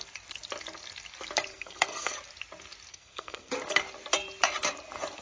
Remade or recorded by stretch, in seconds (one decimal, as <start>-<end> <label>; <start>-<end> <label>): 0.0-1.5 recorded; 1.5-2.1 remade; 2.1-2.9 recorded; 2.9-3.5 remade; 3.5-5.2 recorded